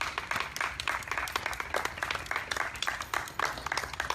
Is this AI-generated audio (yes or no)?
no